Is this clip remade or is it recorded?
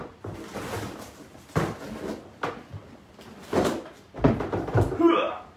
recorded